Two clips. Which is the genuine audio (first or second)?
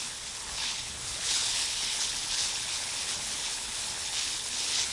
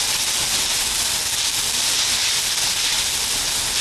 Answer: second